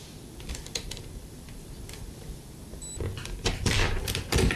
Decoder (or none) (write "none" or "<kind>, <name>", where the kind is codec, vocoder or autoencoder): vocoder, BigVGAN v2